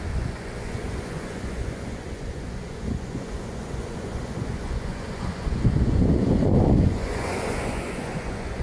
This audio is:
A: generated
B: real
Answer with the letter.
A